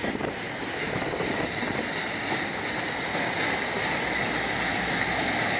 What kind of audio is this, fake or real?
real